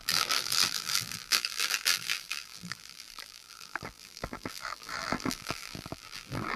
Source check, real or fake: fake